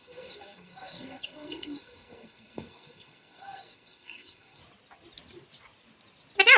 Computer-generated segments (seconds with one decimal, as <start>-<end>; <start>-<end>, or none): 0.0-4.6